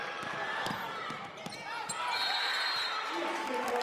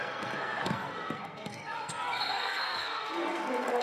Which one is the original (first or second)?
first